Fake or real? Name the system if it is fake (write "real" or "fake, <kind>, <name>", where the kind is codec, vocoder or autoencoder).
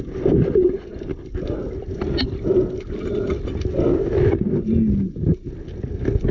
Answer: real